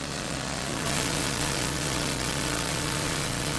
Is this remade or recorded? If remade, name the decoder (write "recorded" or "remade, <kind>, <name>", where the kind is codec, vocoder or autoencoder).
remade, vocoder, Vocos